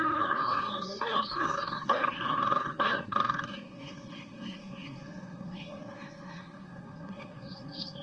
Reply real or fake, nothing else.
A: fake